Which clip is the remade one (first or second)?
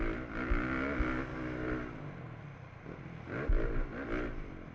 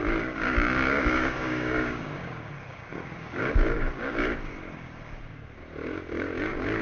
second